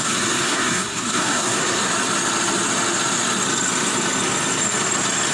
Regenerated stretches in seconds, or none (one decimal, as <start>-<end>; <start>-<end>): 0.0-1.9